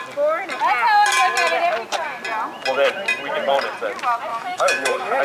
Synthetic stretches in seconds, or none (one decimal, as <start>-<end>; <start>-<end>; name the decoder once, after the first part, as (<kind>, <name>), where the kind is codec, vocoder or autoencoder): 4.3-5.2 (autoencoder, DAC-VAE)